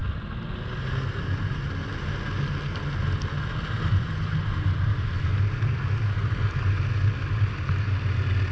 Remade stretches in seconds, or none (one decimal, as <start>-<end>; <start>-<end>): none